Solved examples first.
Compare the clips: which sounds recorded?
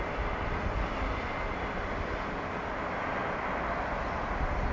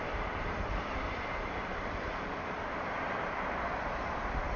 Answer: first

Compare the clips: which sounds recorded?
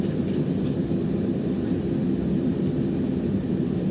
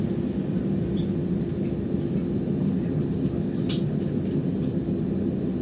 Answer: second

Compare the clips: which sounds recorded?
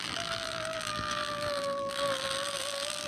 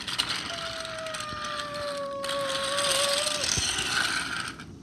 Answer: second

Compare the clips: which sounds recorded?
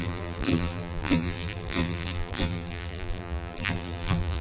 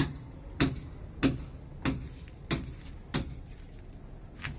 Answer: second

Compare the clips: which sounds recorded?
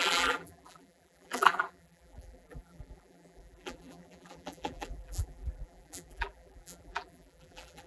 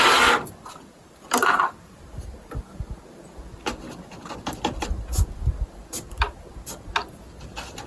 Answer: second